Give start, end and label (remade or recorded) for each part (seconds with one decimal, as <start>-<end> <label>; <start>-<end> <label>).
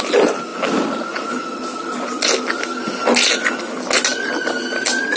0.0-5.2 recorded